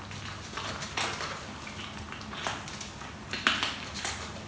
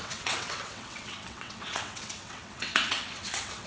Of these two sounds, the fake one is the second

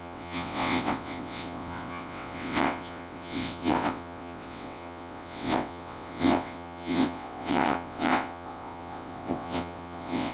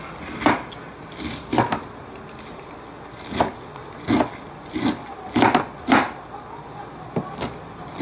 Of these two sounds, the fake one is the first